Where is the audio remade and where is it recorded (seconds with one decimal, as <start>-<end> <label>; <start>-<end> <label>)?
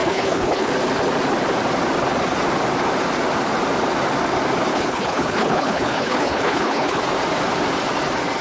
0.0-0.7 remade; 0.7-4.7 recorded; 4.7-7.0 remade; 7.0-8.4 recorded